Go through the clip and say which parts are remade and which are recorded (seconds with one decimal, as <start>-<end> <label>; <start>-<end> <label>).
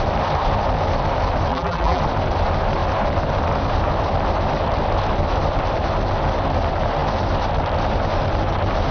0.0-1.5 recorded; 1.5-2.0 remade; 2.0-8.9 recorded